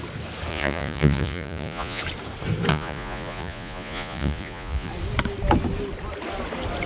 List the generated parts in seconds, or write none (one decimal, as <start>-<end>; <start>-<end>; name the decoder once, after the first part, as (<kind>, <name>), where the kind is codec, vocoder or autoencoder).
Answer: 0.5-2.0 (vocoder, Vocos); 2.7-4.9